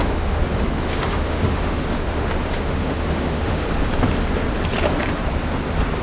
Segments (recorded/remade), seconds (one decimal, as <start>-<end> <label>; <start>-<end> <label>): 0.0-3.6 remade; 3.6-6.0 recorded